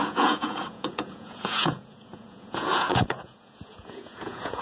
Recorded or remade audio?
remade